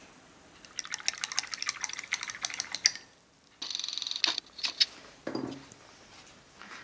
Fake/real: real